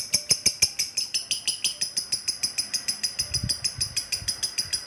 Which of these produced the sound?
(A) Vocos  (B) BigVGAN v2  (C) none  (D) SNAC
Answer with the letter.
C